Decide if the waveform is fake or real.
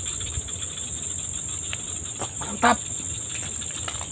real